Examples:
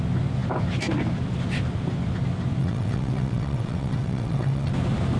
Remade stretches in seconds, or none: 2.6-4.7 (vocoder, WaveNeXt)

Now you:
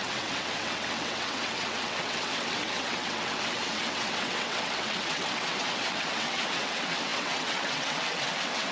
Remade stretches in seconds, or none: 0.0-8.7 (vocoder, WaveNeXt)